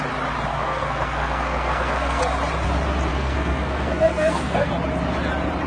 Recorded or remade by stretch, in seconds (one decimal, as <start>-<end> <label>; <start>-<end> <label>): 0.0-0.5 recorded; 0.5-2.2 remade; 2.2-3.1 recorded; 3.1-4.7 remade; 4.7-5.7 recorded